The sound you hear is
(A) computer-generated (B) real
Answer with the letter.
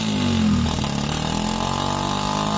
B